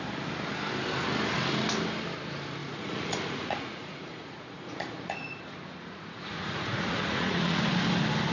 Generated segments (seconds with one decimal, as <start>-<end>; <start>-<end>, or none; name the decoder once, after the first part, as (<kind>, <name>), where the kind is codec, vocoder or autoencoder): 2.6-7.6 (vocoder, Vocos)